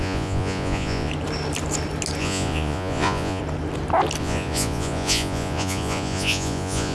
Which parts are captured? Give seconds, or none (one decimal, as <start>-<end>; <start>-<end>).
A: 1.1-2.2; 3.4-4.2